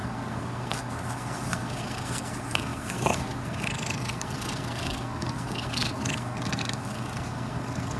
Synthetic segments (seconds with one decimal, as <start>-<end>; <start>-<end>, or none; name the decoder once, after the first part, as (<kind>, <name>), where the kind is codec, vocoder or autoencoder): 0.0-8.0 (codec, SNAC)